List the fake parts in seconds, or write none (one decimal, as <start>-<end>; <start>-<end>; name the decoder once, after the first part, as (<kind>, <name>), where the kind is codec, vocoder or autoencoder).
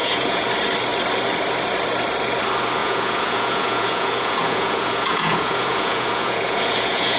0.0-0.5 (vocoder, Vocos); 2.8-7.2